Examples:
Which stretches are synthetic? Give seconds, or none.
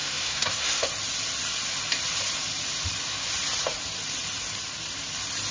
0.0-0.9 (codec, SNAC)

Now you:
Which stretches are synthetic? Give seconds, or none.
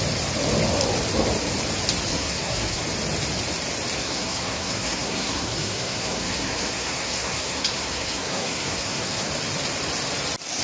2.1-2.8 (codec, SNAC); 4.0-9.3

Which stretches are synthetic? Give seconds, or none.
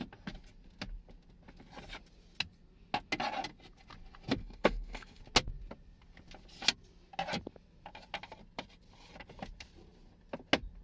4.4-5.2 (codec, SNAC)